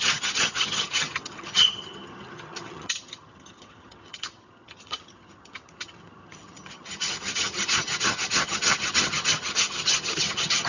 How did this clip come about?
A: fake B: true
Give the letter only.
A